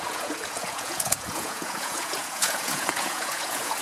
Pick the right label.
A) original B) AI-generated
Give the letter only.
B